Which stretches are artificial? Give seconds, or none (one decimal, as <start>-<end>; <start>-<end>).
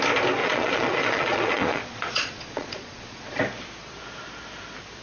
0.4-3.4